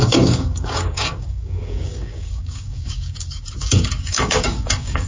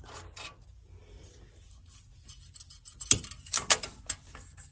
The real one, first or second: second